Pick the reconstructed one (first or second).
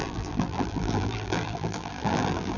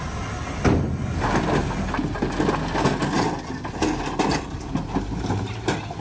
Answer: first